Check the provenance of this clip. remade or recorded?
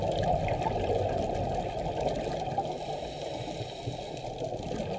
recorded